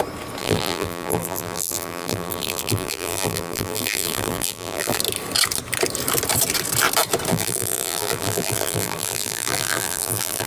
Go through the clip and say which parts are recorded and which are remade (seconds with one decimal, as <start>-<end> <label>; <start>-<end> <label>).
0.0-0.4 recorded; 0.4-5.0 remade; 5.0-7.3 recorded; 7.3-10.5 remade

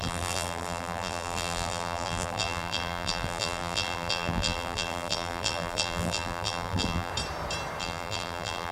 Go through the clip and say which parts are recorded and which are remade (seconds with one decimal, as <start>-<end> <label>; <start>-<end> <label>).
0.0-7.1 remade; 7.1-7.8 recorded; 7.8-8.7 remade